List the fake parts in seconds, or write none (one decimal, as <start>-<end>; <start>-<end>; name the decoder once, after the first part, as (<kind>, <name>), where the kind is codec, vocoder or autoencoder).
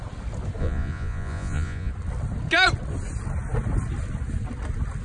0.6-1.9 (vocoder, Vocos)